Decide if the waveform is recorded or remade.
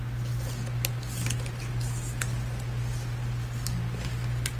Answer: recorded